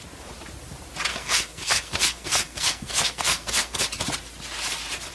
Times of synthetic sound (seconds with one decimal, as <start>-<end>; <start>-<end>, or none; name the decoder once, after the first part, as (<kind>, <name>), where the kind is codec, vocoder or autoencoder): 1.1-3.8 (codec, SNAC)